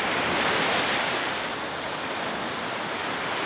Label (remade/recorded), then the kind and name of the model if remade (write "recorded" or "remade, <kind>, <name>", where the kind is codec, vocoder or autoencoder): recorded